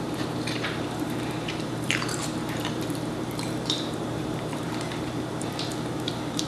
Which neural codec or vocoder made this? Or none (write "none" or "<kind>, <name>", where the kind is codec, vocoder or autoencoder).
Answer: vocoder, BigVGAN v2